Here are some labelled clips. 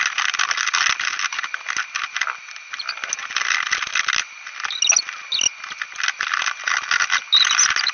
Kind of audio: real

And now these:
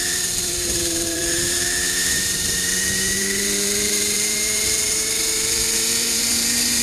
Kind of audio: fake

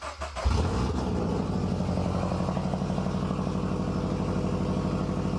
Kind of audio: real